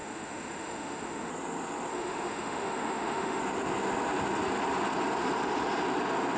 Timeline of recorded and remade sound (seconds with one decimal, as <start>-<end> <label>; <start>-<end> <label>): 0.0-1.3 remade; 1.3-1.9 recorded; 1.9-3.4 remade; 3.4-6.4 recorded